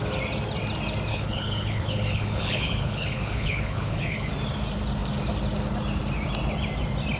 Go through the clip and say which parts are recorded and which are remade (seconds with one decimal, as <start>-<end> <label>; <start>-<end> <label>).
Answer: 0.0-1.1 recorded; 1.1-4.3 remade; 4.3-7.2 recorded